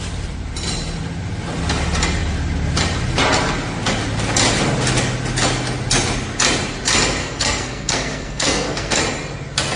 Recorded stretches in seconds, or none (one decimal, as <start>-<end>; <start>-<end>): 0.0-7.2; 9.0-9.8